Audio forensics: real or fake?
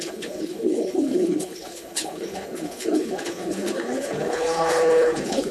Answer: fake